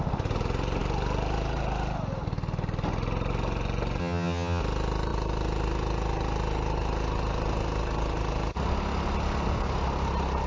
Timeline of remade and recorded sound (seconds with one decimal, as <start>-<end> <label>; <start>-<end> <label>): 0.0-4.0 recorded; 4.0-4.6 remade; 4.6-10.5 recorded